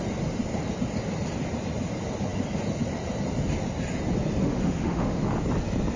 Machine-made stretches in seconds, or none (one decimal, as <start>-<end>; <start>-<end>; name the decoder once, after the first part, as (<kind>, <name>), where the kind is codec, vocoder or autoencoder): 4.4-5.2 (autoencoder, DAC-VAE)